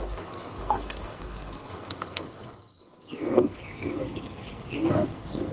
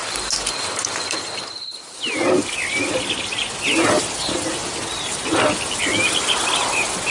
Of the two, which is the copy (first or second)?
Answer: first